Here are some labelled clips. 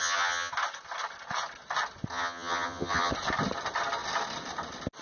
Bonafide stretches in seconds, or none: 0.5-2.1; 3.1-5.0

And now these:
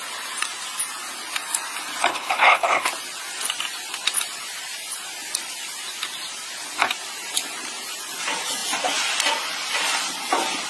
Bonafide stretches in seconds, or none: 0.0-2.1; 2.9-10.7

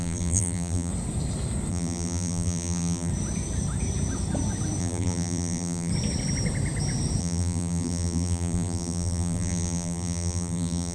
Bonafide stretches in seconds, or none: 0.9-1.7; 3.1-4.8; 5.9-7.2

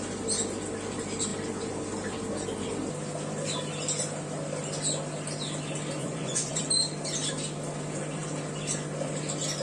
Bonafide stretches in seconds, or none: 0.0-6.0; 6.6-9.6